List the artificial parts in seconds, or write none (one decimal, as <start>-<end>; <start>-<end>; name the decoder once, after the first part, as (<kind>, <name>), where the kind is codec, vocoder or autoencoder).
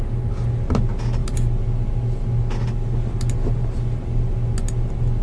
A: none